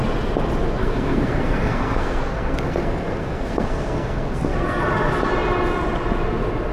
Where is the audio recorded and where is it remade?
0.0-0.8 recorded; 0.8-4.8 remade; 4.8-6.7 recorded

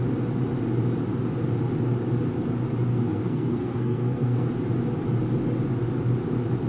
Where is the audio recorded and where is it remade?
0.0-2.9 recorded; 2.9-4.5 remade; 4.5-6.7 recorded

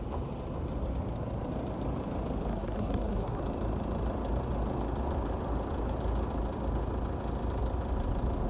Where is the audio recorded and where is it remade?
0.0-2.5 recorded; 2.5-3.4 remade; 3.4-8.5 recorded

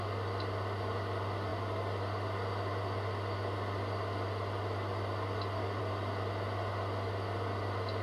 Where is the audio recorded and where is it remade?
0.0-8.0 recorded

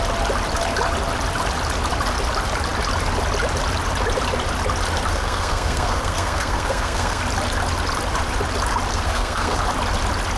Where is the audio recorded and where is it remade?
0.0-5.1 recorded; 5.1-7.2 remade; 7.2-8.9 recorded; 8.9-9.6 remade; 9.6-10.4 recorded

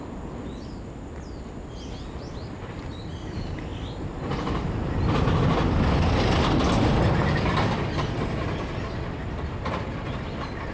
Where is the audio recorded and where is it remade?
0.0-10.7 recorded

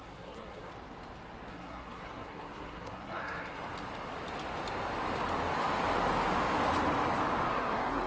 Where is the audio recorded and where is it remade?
0.0-0.7 remade; 0.7-1.5 recorded; 1.5-3.6 remade; 3.6-7.5 recorded; 7.5-8.1 remade

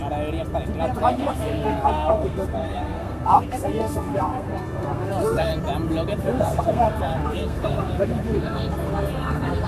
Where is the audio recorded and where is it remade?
0.0-1.1 recorded; 1.1-5.5 remade; 5.5-6.2 recorded; 6.2-9.7 remade